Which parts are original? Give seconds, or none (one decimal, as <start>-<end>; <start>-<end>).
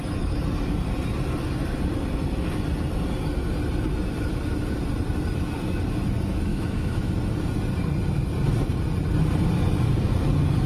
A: 0.0-6.5; 7.1-10.7